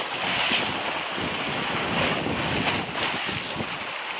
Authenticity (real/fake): real